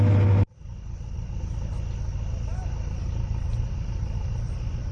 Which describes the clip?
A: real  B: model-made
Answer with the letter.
A